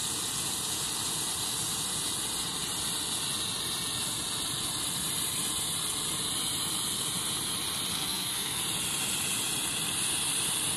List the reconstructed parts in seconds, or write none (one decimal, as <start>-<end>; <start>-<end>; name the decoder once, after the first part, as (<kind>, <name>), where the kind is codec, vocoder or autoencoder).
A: 7.9-8.6 (codec, SNAC)